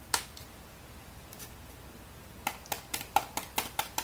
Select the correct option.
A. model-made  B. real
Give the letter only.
B